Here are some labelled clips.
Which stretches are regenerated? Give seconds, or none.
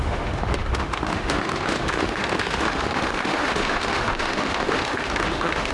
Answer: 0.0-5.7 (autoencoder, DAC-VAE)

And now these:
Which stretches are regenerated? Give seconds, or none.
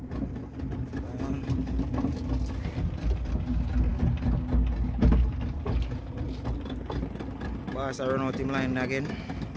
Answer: none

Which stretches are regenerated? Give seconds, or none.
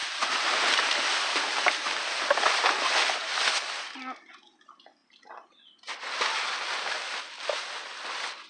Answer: 0.0-2.0 (vocoder, BigVGAN v2)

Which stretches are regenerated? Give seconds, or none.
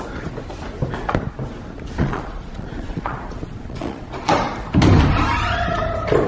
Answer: 2.0-4.3 (vocoder, Vocos)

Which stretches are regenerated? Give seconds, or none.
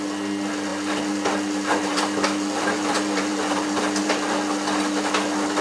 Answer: 0.7-4.1 (vocoder, BigVGAN v2)